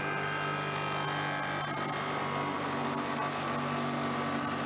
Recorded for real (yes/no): yes